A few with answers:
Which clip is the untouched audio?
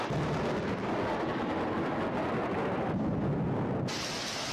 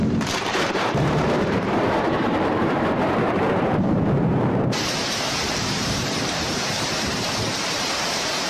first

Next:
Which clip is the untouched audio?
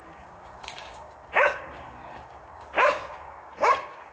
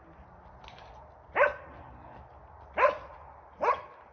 second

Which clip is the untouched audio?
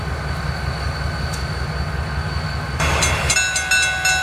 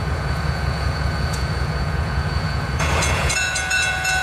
first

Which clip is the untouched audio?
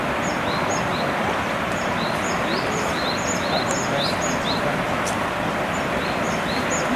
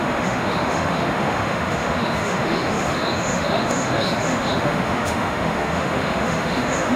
first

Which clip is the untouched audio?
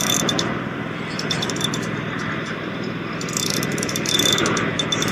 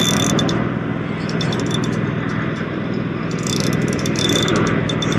second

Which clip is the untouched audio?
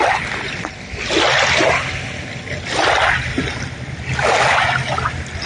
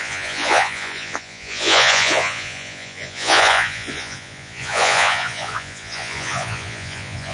first